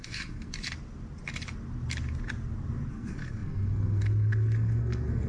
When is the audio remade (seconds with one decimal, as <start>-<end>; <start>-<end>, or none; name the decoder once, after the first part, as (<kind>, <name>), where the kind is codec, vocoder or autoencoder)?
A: 0.0-0.5 (codec, SNAC); 2.9-5.3